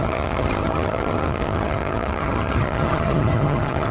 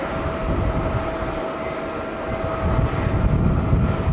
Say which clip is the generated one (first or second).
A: first